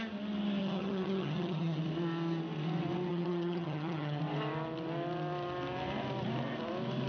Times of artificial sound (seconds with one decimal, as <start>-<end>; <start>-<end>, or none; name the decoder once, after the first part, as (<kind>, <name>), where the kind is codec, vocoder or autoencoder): 0.6-1.8 (vocoder, HiFi-GAN); 3.1-4.2